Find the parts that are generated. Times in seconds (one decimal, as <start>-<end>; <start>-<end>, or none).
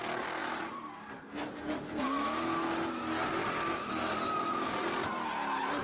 none